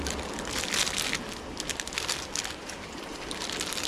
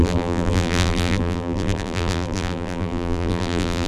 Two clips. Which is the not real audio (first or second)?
second